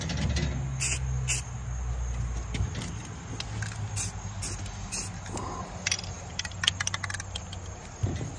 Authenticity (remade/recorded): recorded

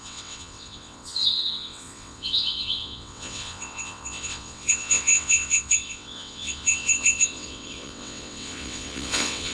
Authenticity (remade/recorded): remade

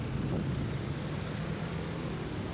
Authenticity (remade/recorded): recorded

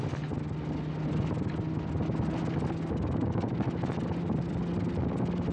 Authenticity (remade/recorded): recorded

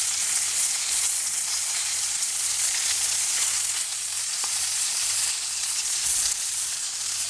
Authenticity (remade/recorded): remade